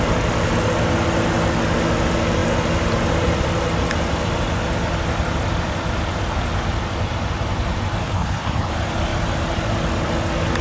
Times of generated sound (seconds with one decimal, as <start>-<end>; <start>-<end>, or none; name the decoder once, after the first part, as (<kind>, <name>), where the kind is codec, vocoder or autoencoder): 8.0-8.7 (codec, HILCodec)